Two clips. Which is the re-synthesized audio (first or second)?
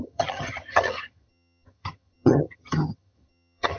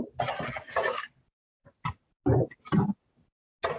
first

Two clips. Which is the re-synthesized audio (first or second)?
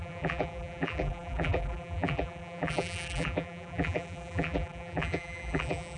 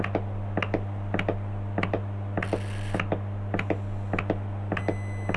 first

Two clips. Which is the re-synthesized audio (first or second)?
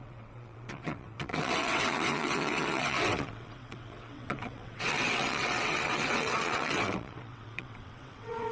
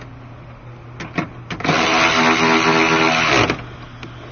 first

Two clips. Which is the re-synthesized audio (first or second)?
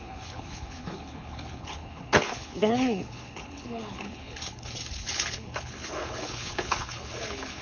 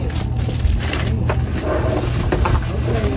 first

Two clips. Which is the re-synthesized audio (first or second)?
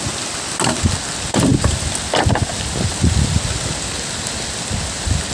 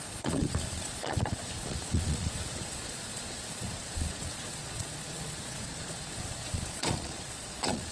second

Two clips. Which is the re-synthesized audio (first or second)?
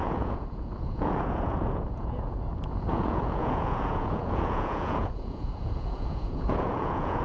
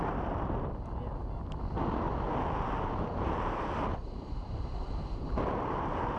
first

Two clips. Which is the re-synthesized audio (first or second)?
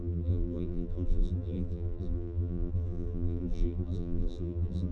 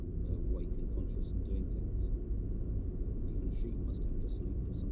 first